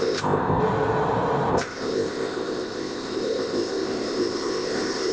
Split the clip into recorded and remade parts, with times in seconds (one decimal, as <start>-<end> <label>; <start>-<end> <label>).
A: 0.0-0.6 remade; 0.6-1.5 recorded; 1.5-5.1 remade